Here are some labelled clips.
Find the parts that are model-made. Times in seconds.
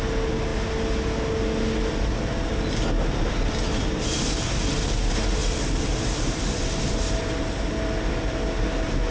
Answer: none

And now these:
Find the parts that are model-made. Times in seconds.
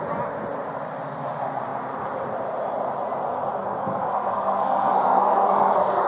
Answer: 3.6-6.1 (codec, SNAC)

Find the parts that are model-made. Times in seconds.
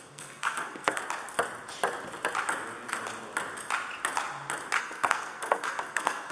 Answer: 0.0-1.0 (codec, SNAC); 4.8-6.3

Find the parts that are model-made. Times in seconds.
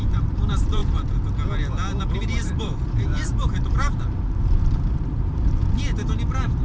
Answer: 0.0-0.8 (vocoder, BigVGAN v2); 2.2-5.6